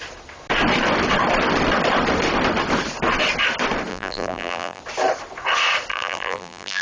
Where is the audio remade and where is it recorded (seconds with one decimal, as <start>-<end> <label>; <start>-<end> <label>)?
0.0-3.9 recorded; 3.9-4.8 remade; 4.8-5.9 recorded; 5.9-6.8 remade